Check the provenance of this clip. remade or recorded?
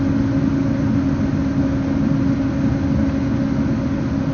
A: recorded